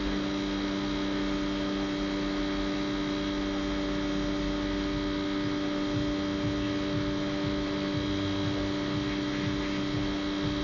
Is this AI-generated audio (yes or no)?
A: no